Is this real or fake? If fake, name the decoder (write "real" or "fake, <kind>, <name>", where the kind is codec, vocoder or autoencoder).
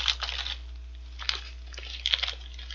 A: real